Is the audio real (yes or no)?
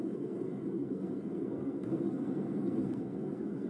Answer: no